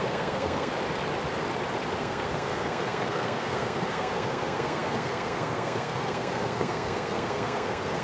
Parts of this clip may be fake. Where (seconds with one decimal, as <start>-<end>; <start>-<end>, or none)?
0.0-0.7; 2.0-8.0